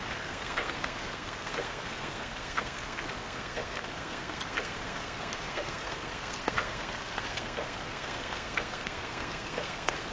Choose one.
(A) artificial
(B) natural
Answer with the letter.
A